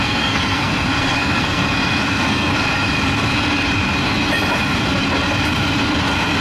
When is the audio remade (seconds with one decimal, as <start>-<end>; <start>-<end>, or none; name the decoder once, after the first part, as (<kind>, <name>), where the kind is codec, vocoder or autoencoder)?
0.0-2.5 (codec, SNAC)